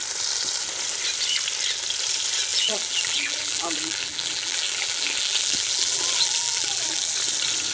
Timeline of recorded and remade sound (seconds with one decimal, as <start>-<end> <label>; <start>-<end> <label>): 0.0-2.5 recorded; 2.5-7.1 remade; 7.1-7.7 recorded